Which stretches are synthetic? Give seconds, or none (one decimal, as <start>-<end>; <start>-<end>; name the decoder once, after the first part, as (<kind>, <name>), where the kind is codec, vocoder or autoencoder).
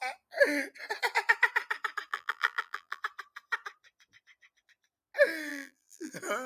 2.1-3.0 (vocoder, BigVGAN v2); 5.5-6.1